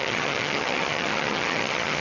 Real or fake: fake